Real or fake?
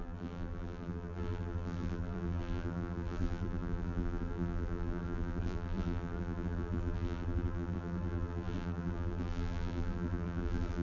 fake